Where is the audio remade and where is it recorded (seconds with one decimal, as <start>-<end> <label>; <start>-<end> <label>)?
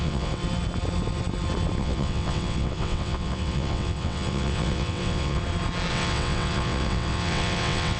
0.0-0.4 remade; 0.4-1.8 recorded; 1.8-5.4 remade; 5.4-5.9 recorded; 5.9-8.0 remade